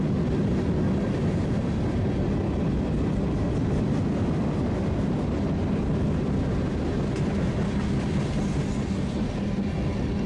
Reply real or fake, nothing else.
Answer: real